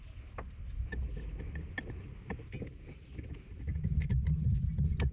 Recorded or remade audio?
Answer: recorded